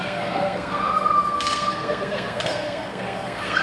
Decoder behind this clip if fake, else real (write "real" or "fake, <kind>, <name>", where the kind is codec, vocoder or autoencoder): fake, codec, SNAC